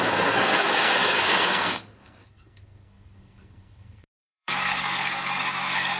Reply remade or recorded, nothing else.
remade